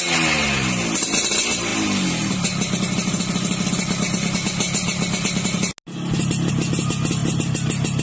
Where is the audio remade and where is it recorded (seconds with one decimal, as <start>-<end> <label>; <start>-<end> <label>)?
0.0-8.0 recorded